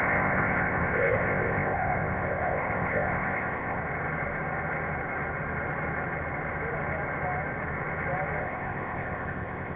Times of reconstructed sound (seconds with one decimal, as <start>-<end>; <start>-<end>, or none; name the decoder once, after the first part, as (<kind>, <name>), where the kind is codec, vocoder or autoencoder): 0.0-3.8 (codec, ZipCodec); 8.4-9.8